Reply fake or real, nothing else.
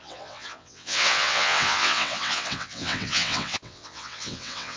fake